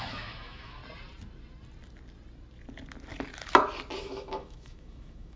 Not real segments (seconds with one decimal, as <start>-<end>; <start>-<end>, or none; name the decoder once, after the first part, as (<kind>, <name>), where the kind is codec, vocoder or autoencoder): 0.0-0.8 (autoencoder, DAC-VAE); 4.0-5.4